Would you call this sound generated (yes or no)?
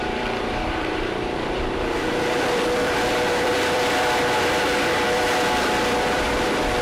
yes